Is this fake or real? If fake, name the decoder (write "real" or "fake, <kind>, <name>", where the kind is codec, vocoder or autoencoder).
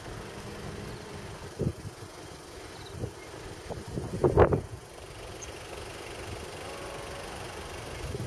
real